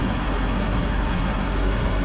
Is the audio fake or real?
fake